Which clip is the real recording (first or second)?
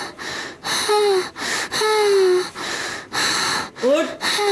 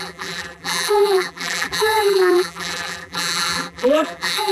first